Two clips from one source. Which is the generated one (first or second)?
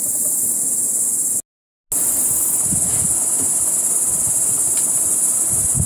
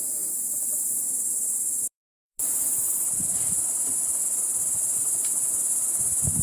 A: second